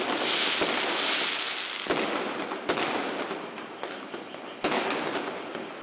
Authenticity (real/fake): real